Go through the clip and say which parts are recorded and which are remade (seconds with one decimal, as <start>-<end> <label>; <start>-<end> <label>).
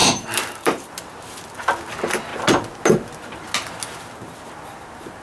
0.0-0.9 remade; 0.9-5.2 recorded